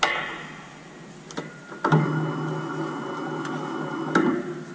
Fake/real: real